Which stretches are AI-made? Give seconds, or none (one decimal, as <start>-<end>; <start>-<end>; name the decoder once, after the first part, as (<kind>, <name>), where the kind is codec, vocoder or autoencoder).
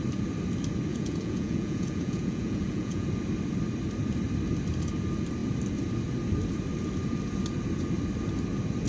0.9-3.1 (vocoder, Vocos)